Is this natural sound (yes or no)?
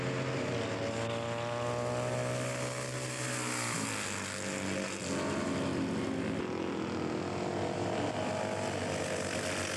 yes